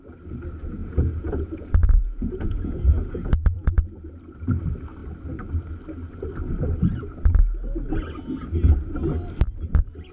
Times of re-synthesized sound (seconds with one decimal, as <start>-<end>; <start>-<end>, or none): 0.8-4.1